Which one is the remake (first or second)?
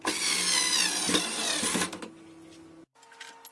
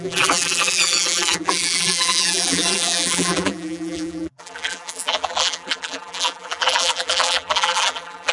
second